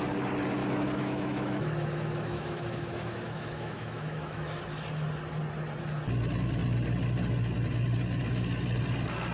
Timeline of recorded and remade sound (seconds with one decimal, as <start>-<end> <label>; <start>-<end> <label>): 0.0-0.6 recorded; 0.6-4.6 remade; 4.6-9.3 recorded